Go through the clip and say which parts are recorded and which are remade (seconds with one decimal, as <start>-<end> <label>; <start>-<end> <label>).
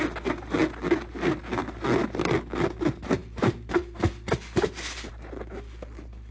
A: 0.0-6.3 recorded